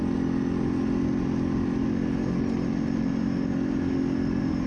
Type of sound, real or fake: real